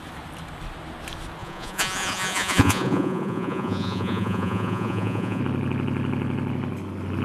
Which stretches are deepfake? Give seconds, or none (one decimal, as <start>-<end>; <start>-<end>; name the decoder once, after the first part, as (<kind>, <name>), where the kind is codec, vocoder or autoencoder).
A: 1.4-5.4 (vocoder, Vocos)